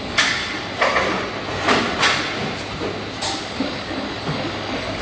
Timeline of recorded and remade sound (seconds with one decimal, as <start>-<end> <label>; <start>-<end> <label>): 0.0-0.4 remade; 0.4-3.4 recorded; 3.4-5.0 remade